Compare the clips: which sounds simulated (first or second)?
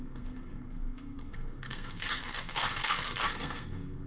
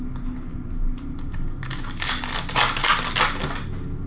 first